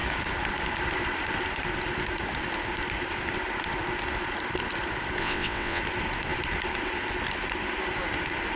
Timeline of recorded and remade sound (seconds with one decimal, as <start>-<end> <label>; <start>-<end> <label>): 0.0-5.2 recorded; 5.2-5.8 remade; 5.8-8.6 recorded